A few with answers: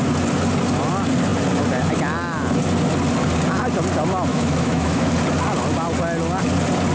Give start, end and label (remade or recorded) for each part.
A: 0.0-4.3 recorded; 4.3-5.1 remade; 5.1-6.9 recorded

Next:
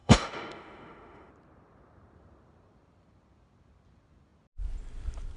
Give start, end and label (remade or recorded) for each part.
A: 0.0-1.3 remade; 1.3-5.4 recorded

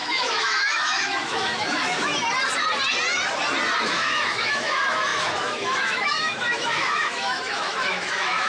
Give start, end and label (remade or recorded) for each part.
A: 0.0-2.1 remade; 2.1-3.8 recorded; 3.8-8.5 remade

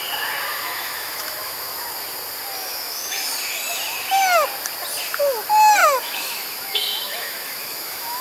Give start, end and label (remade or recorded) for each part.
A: 0.0-0.5 recorded; 0.5-1.9 remade; 1.9-2.6 recorded; 2.6-3.3 remade; 3.3-5.8 recorded; 5.8-8.2 remade

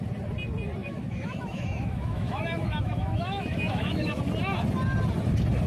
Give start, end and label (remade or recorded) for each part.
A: 0.0-0.8 recorded; 0.8-4.2 remade; 4.2-5.7 recorded

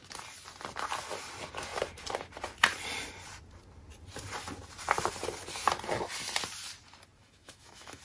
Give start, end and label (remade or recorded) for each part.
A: 0.0-7.2 recorded; 7.2-8.0 remade